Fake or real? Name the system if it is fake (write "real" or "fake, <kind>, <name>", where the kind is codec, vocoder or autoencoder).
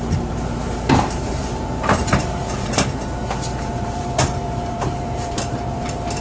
fake, vocoder, BigVGAN v2